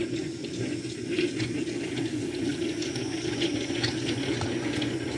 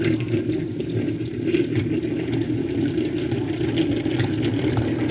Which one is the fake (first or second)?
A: first